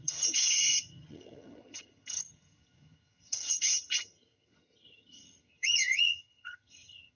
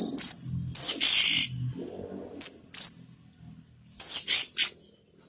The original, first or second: second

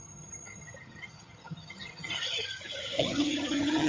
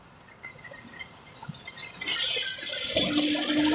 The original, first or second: second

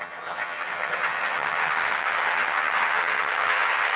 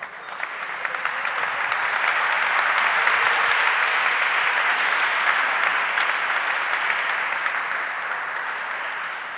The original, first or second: second